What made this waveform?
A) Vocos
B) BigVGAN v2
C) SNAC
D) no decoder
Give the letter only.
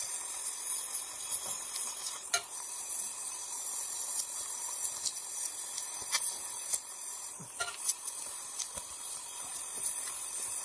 D